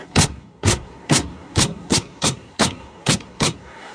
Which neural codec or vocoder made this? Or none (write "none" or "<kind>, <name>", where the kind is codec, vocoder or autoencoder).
codec, SNAC